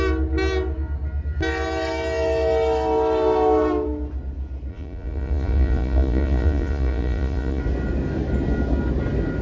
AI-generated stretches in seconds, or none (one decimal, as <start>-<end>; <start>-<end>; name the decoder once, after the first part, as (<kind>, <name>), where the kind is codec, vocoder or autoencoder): 4.7-7.6 (vocoder, Vocos)